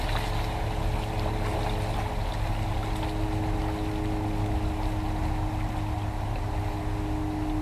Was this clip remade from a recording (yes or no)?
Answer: no